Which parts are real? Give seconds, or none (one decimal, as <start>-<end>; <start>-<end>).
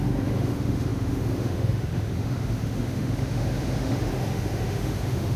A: none